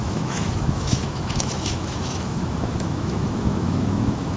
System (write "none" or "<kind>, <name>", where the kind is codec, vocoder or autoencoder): autoencoder, DAC-VAE